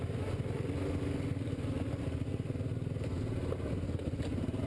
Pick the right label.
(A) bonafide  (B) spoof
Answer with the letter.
A